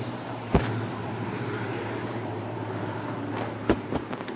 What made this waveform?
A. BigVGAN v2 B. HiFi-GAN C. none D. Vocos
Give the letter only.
A